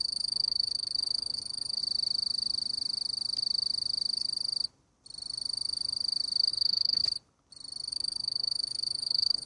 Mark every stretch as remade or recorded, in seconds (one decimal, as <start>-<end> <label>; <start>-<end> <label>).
0.0-1.8 remade; 1.8-6.5 recorded; 6.5-7.0 remade; 7.0-7.9 recorded; 7.9-9.5 remade